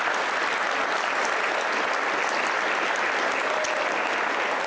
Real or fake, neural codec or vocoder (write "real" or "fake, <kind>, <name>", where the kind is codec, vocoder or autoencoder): real